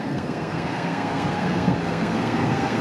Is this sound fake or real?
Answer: fake